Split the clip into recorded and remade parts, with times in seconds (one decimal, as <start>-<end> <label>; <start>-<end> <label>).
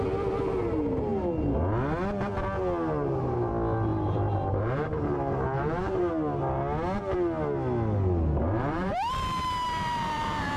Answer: 0.0-3.9 recorded; 3.9-6.1 remade; 6.1-8.4 recorded; 8.4-10.6 remade